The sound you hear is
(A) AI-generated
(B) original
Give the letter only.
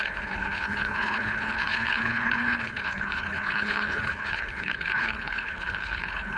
A